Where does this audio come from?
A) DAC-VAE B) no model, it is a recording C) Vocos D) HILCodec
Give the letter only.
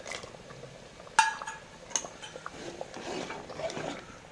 B